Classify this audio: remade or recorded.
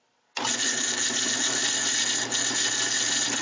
recorded